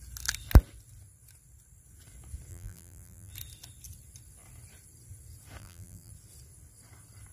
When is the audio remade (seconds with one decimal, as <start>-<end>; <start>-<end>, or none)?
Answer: 2.5-3.3; 5.6-6.1